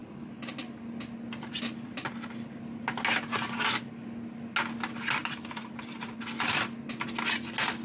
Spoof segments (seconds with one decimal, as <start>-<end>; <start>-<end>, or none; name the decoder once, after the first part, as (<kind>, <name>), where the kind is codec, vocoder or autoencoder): 0.0-0.5 (vocoder, BigVGAN v2); 5.2-6.2